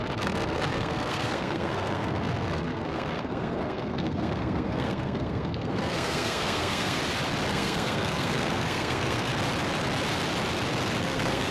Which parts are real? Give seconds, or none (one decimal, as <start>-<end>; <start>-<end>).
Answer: 7.0-7.5; 9.3-11.0